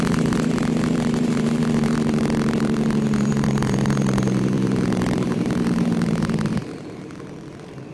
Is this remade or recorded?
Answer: remade